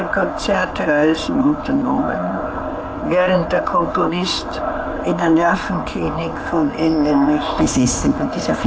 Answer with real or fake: fake